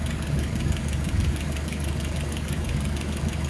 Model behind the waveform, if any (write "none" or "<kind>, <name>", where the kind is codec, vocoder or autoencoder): codec, DAC